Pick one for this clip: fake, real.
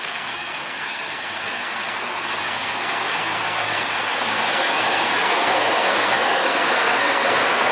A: fake